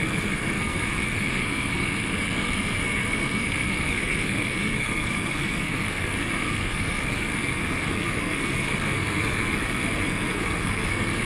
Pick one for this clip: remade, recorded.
remade